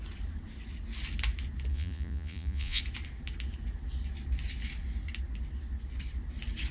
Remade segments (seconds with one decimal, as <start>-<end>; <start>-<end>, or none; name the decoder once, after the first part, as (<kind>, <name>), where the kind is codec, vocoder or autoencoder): 1.7-2.8 (vocoder, Vocos)